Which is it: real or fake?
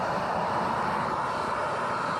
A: real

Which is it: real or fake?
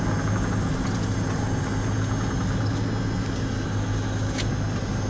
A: real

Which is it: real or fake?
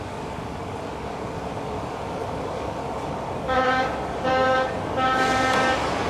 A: fake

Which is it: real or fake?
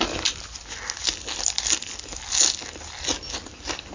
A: real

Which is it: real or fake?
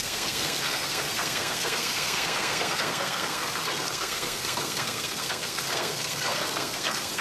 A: fake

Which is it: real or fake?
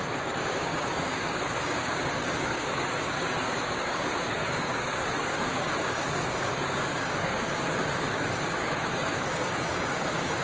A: fake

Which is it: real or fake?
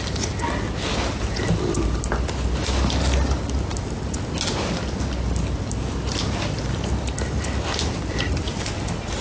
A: real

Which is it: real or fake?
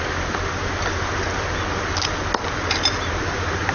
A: real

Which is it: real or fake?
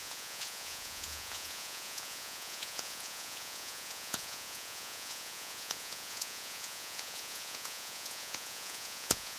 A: fake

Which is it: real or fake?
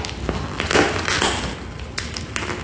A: real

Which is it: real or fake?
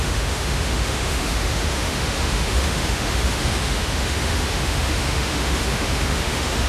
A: fake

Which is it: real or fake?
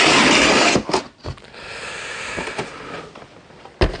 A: real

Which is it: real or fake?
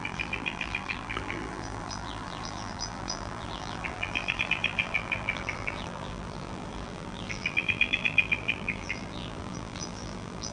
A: fake